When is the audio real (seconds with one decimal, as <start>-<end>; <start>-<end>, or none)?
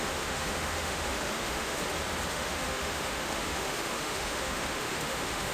1.8-2.3